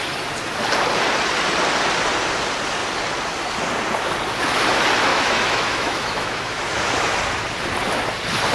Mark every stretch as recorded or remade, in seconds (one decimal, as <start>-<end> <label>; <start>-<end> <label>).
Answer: 0.0-5.1 recorded; 5.1-7.2 remade; 7.2-8.5 recorded